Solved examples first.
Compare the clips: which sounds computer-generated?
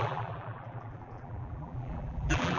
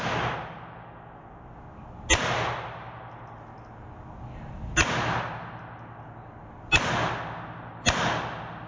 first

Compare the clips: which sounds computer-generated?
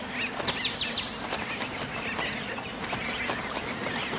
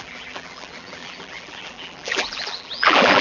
second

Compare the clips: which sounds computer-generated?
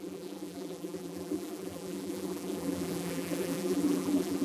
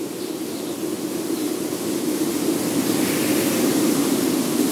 first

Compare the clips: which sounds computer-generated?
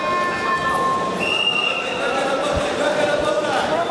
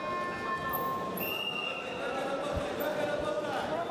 first